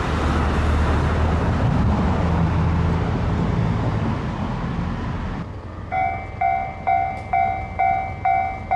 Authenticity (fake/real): real